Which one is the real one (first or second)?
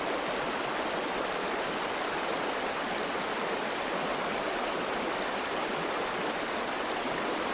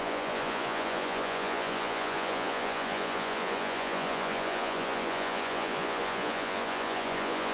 first